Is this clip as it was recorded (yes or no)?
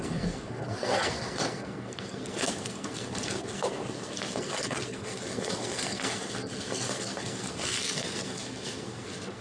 no